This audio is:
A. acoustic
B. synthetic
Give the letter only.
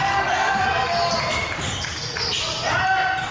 A